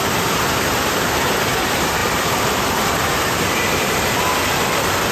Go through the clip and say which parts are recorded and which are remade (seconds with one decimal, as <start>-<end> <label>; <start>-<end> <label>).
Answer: 0.0-2.0 recorded; 2.0-2.6 remade; 2.6-5.1 recorded